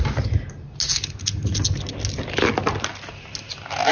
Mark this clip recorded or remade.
recorded